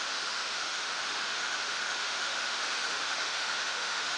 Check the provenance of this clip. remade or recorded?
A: remade